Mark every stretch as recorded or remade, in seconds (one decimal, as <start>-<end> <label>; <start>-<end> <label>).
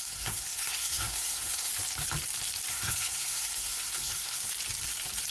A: 0.0-1.7 remade; 1.7-2.7 recorded; 2.7-4.4 remade; 4.4-5.3 recorded